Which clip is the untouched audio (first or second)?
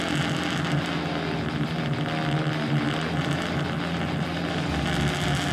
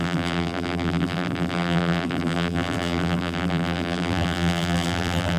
first